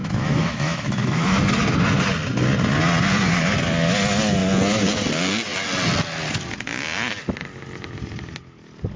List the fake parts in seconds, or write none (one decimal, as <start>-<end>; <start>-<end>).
0.0-1.4